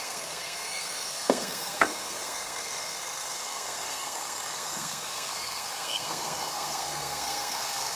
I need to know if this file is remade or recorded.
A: remade